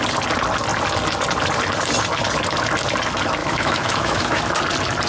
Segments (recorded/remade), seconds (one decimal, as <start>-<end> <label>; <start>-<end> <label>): 0.0-3.4 recorded; 3.4-4.4 remade; 4.4-5.1 recorded